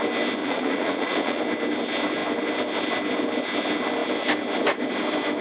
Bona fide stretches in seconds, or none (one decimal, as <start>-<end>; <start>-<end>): 0.0-0.4; 1.4-5.4